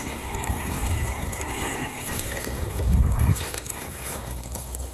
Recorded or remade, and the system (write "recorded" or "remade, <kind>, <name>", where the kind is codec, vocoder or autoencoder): remade, codec, SNAC